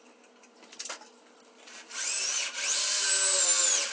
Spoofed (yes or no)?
no